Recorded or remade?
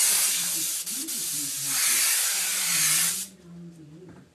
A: recorded